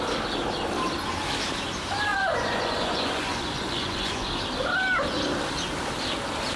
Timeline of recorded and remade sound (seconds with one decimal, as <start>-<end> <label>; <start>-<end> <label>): 0.0-2.1 recorded; 2.1-4.3 remade; 4.3-6.6 recorded